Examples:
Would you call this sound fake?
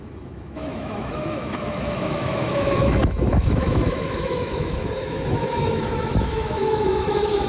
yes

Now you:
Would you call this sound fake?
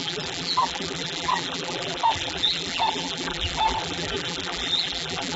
yes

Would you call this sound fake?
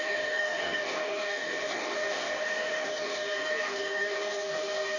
yes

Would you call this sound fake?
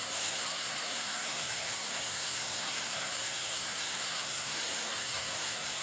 yes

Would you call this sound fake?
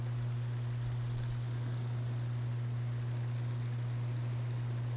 no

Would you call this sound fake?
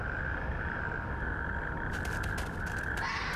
no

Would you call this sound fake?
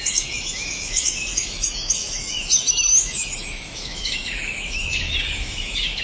yes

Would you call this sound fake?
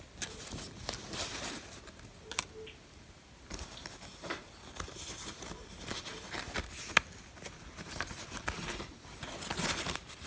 no